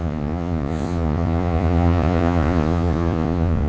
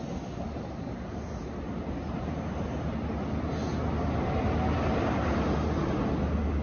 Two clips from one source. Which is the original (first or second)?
second